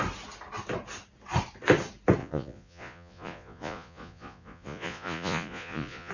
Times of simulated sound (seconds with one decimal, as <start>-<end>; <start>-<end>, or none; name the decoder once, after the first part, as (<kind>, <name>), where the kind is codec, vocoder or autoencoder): 2.2-6.1 (vocoder, Vocos)